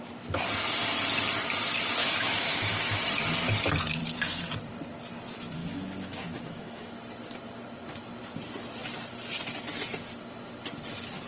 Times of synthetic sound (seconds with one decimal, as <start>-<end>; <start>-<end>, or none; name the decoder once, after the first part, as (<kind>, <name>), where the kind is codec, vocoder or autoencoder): 2.0-3.0 (autoencoder, DAC-VAE); 5.6-6.9